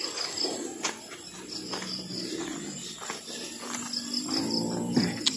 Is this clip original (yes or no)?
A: yes